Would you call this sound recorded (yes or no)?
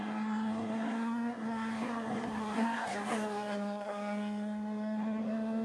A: no